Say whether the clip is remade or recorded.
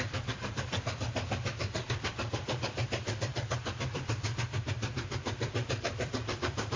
remade